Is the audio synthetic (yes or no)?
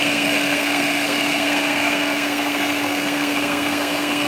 yes